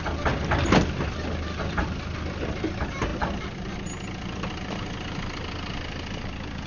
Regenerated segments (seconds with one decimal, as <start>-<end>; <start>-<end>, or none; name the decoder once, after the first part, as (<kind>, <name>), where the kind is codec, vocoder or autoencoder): none